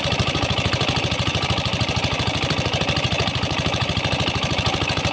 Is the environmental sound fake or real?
fake